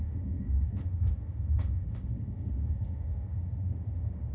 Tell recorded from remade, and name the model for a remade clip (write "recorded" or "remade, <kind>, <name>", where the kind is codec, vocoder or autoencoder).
remade, autoencoder, DAC-VAE